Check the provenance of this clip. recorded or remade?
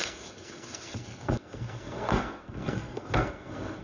remade